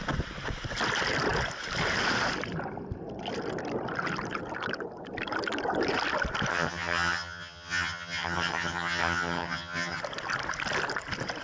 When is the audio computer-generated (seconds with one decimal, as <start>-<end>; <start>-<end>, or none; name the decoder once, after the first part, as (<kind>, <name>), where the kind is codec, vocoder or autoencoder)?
6.5-10.0 (vocoder, HiFi-GAN)